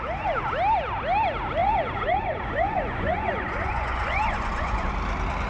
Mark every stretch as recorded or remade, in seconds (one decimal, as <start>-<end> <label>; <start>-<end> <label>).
0.0-1.6 recorded; 1.6-4.9 remade; 4.9-5.5 recorded